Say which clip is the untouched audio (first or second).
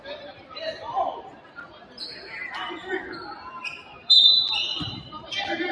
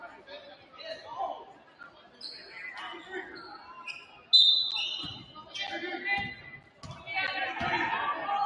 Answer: second